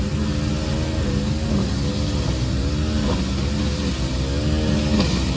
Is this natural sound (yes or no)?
yes